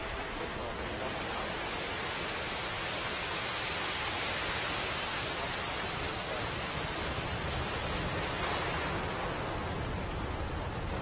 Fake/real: real